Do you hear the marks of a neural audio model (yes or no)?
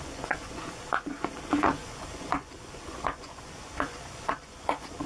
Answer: yes